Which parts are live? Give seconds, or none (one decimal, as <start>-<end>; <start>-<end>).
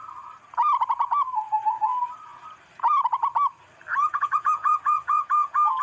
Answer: 0.0-4.0